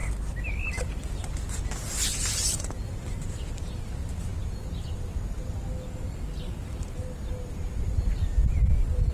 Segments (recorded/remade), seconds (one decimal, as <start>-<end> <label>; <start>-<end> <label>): 0.0-9.1 recorded